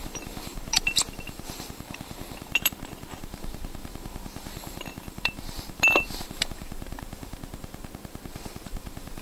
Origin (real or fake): fake